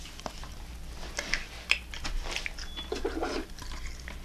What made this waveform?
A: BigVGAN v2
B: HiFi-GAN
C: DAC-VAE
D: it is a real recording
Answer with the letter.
D